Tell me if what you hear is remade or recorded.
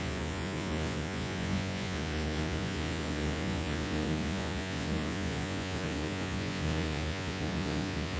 remade